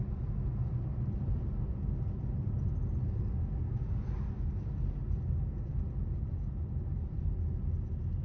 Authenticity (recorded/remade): recorded